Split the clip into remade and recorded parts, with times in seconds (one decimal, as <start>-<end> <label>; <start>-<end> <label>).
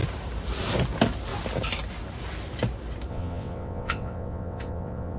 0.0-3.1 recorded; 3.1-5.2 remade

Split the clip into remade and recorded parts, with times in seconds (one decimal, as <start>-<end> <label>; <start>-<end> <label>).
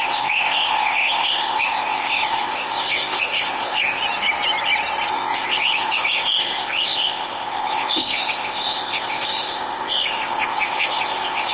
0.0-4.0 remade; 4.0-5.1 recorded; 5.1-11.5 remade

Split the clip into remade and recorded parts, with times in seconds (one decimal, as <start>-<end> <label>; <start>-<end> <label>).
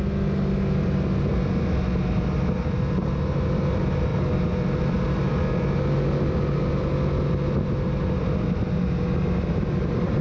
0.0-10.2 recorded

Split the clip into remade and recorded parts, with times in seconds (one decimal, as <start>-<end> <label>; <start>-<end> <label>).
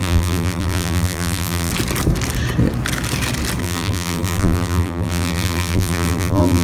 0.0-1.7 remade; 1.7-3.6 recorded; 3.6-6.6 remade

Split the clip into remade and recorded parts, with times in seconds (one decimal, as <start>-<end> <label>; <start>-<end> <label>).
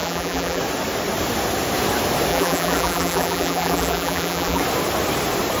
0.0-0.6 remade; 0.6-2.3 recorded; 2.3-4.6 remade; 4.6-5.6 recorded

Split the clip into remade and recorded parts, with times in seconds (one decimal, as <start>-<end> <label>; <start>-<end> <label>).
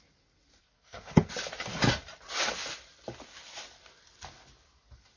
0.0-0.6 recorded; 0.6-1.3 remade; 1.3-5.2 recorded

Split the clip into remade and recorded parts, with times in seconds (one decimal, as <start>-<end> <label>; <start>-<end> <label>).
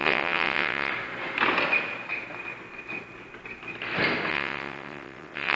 0.0-0.9 remade; 0.9-4.3 recorded; 4.3-5.6 remade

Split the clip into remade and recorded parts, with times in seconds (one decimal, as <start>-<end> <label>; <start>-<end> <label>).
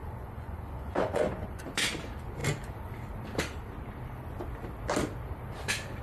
0.0-1.6 remade; 1.6-6.0 recorded